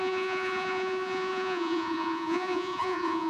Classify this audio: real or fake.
fake